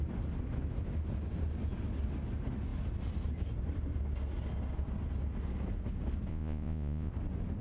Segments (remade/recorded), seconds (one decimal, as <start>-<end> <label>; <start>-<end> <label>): 0.0-6.3 recorded; 6.3-7.1 remade; 7.1-7.6 recorded